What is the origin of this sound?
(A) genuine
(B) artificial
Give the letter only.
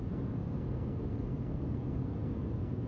B